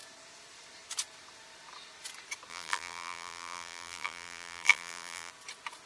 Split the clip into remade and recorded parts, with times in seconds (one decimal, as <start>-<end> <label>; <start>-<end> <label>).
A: 0.0-2.5 recorded; 2.5-5.3 remade; 5.3-5.9 recorded